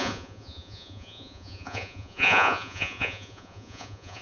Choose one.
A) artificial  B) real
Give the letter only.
A